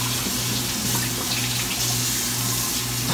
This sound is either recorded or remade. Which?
recorded